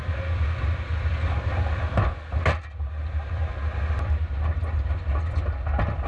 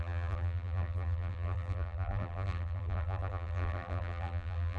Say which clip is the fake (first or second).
second